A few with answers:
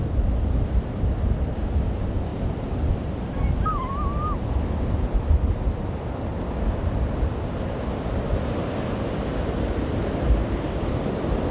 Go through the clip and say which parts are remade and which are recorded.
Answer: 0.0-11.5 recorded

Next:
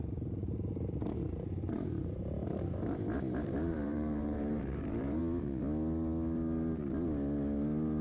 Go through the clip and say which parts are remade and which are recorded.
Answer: 0.0-0.4 recorded; 0.4-5.2 remade; 5.2-8.0 recorded

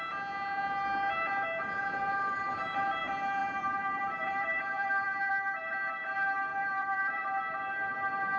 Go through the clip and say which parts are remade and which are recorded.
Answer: 0.0-3.4 recorded; 3.4-5.3 remade; 5.3-6.5 recorded; 6.5-7.3 remade; 7.3-8.4 recorded

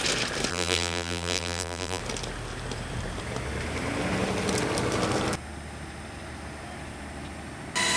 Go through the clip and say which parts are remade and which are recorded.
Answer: 0.0-0.5 recorded; 0.5-2.0 remade; 2.0-8.0 recorded

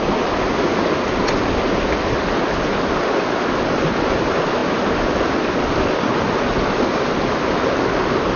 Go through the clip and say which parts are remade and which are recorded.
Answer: 0.0-8.4 recorded

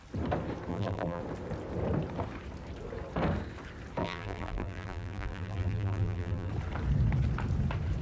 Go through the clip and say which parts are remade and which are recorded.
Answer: 0.0-0.7 recorded; 0.7-1.2 remade; 1.2-4.0 recorded; 4.0-6.5 remade; 6.5-8.0 recorded

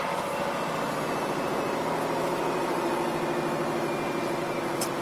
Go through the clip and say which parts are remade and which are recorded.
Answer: 0.0-2.3 recorded; 2.3-2.9 remade; 2.9-5.0 recorded

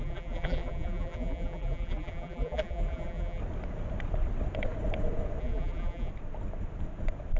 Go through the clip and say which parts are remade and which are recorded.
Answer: 0.0-3.4 remade; 3.4-5.4 recorded; 5.4-6.1 remade; 6.1-7.4 recorded